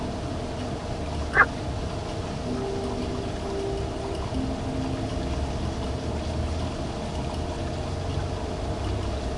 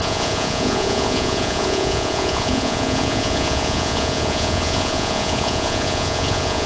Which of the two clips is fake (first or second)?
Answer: second